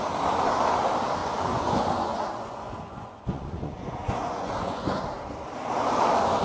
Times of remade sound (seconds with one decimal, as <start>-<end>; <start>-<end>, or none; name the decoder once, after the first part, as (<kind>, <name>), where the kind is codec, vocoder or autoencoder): 1.2-5.0 (vocoder, Vocos)